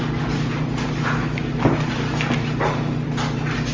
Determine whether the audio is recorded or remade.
recorded